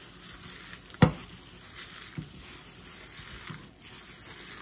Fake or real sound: real